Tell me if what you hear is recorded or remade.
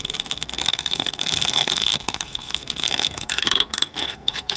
remade